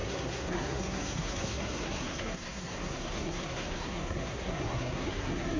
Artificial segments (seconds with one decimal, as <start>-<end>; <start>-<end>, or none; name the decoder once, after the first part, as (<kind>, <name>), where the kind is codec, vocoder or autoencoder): 0.0-5.6 (codec, SNAC)